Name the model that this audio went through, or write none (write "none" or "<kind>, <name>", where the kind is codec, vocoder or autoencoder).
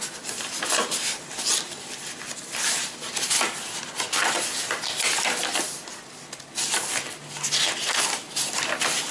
none